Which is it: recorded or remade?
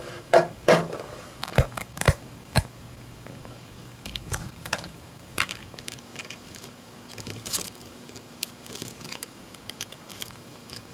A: remade